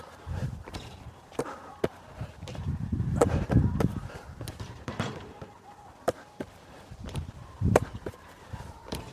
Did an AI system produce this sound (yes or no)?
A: yes